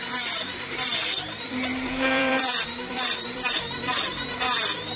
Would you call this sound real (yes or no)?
no